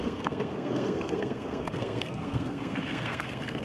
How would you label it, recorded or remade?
remade